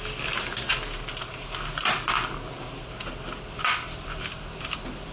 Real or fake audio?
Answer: real